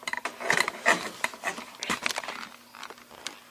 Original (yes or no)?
yes